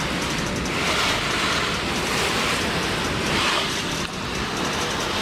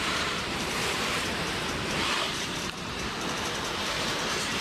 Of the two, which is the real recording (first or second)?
first